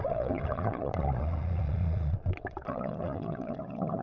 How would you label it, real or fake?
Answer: fake